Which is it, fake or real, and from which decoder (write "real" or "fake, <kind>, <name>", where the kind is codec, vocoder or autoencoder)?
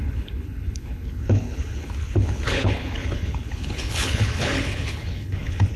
fake, codec, HILCodec